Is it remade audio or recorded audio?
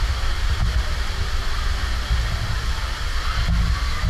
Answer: recorded